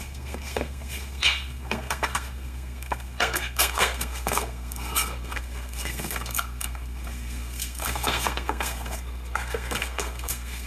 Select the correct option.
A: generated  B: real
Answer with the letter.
A